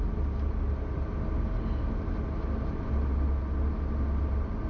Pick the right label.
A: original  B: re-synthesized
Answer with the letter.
A